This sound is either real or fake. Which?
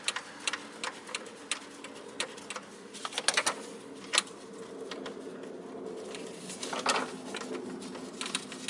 real